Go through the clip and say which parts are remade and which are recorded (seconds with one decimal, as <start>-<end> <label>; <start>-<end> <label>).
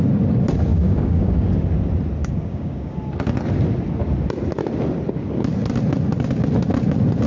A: 0.0-0.7 recorded; 0.7-1.5 remade; 1.5-2.2 recorded; 2.2-2.9 remade; 2.9-7.3 recorded